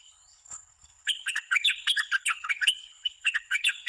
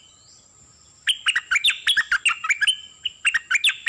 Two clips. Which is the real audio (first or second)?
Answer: second